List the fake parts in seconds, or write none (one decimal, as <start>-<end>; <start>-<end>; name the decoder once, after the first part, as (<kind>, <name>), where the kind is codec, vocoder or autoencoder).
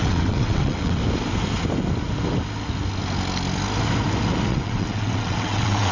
0.0-1.0 (vocoder, WaveNeXt); 4.5-5.9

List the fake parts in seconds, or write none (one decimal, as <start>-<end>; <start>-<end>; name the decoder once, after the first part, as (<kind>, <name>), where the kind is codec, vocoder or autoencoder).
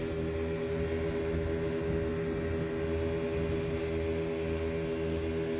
none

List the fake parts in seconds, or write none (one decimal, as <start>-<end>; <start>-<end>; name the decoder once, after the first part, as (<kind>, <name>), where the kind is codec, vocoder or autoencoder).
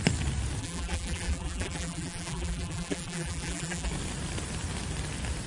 0.6-3.9 (vocoder, BigVGAN v2)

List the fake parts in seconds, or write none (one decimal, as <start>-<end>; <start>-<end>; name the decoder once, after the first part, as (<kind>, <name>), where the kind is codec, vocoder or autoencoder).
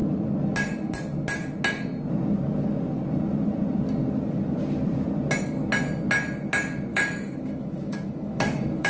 6.9-8.9 (autoencoder, DAC-VAE)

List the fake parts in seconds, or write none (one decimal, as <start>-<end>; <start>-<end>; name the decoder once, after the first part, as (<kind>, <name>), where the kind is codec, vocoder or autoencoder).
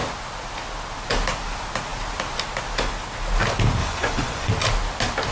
3.8-4.5 (vocoder, Vocos)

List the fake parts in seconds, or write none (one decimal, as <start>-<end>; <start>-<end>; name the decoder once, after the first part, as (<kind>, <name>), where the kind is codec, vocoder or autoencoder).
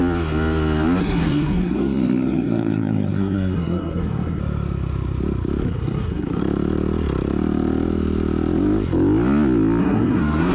1.0-4.4 (codec, SNAC); 5.6-6.4; 9.8-10.5